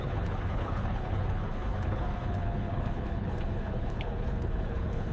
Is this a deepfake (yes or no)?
yes